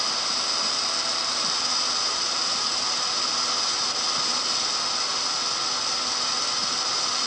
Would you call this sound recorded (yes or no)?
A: yes